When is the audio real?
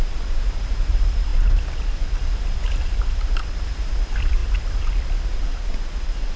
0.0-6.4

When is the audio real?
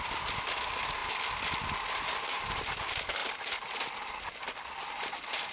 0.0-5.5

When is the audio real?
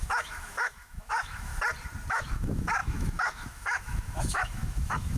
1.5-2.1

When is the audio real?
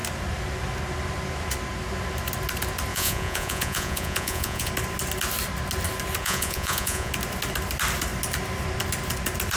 0.0-2.9; 4.7-6.2; 7.1-9.6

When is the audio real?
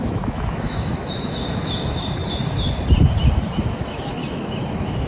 2.2-3.6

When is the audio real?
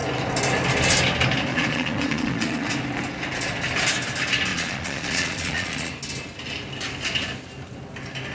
0.0-1.5; 2.7-4.5; 5.9-8.3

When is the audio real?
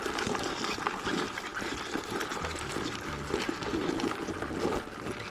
0.0-5.3